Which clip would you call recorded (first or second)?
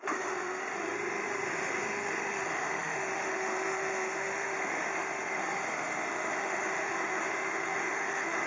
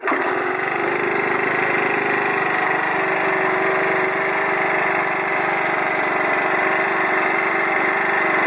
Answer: second